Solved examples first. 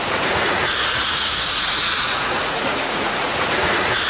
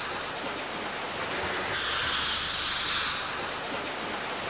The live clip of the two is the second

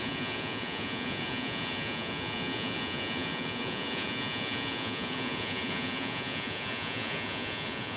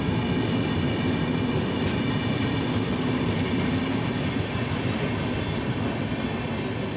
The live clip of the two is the second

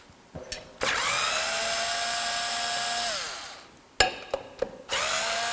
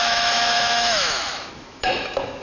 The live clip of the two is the first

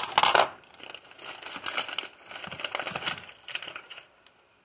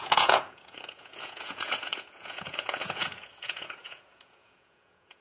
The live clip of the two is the first